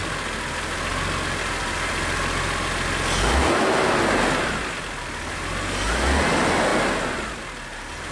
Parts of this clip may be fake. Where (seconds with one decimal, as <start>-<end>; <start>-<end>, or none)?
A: none